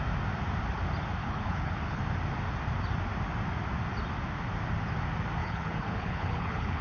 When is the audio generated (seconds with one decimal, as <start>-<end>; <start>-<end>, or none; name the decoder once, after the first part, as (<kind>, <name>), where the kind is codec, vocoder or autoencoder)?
1.2-2.0 (codec, HILCodec); 5.4-6.8